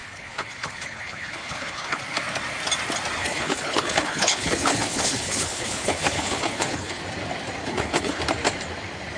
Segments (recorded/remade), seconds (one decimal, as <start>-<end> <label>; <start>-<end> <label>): 0.0-2.0 remade; 2.0-3.2 recorded; 3.2-7.0 remade; 7.0-7.6 recorded; 7.6-8.2 remade; 8.2-9.2 recorded